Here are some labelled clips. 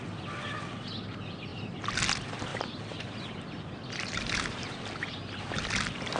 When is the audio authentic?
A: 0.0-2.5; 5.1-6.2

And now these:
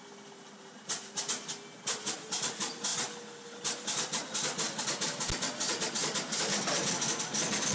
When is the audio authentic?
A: 0.0-7.7

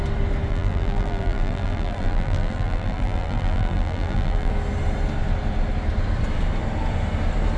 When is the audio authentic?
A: 0.0-0.5; 4.5-7.6

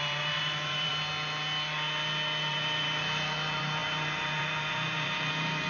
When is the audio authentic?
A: 0.9-2.5